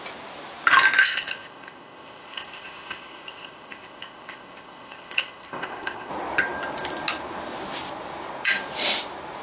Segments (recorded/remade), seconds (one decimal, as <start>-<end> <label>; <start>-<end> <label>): 0.0-1.0 recorded; 1.0-6.1 remade; 6.1-9.4 recorded